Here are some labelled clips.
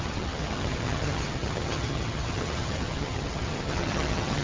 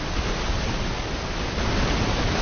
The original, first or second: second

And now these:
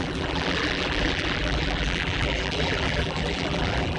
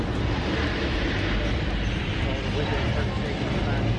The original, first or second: second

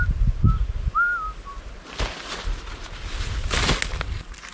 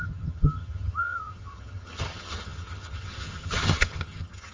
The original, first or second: first